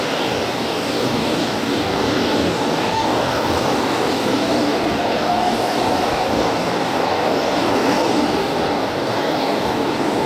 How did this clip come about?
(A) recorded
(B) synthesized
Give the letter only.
B